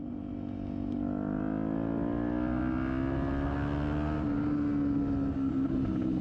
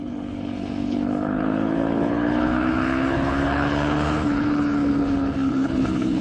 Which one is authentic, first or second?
first